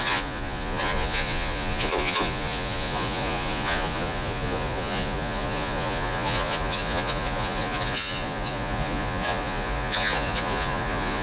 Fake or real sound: fake